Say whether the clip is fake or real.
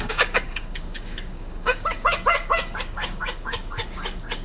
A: fake